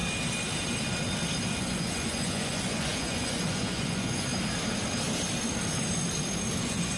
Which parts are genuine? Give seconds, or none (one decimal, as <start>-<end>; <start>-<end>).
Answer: 0.0-1.6; 4.3-6.6

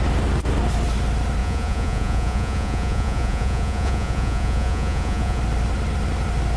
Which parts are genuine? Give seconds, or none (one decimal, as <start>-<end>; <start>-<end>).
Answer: 0.0-1.4; 5.4-6.6

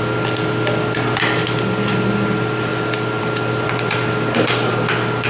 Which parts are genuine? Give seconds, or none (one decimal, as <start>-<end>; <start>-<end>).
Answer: 0.0-5.3

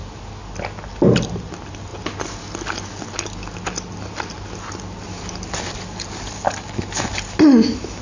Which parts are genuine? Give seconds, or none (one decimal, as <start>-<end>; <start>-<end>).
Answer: 0.0-8.0